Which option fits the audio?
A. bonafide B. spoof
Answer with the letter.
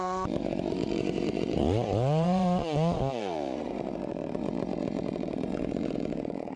B